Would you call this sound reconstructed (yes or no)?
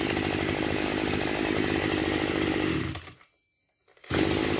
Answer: no